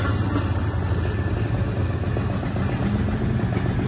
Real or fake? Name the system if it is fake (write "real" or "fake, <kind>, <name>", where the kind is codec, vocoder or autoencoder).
real